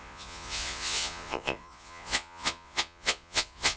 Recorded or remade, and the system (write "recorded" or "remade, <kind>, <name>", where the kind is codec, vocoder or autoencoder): remade, vocoder, Vocos